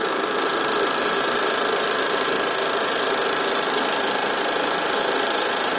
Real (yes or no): no